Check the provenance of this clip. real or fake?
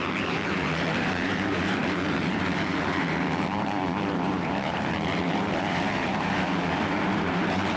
fake